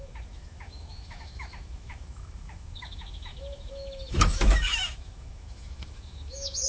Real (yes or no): no